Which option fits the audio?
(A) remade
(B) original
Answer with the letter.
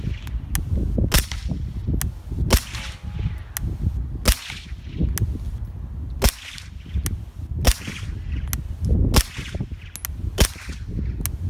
B